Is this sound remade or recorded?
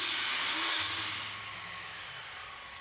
recorded